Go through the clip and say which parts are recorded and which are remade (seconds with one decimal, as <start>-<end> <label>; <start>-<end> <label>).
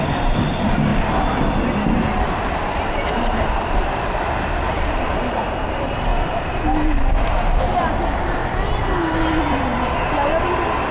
0.0-0.9 remade; 0.9-2.4 recorded; 2.4-6.1 remade; 6.1-7.6 recorded; 7.6-8.4 remade; 8.4-9.5 recorded; 9.5-10.9 remade